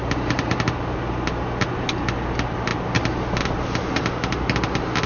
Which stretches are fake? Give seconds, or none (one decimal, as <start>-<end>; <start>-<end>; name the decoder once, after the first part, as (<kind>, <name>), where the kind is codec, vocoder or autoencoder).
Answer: none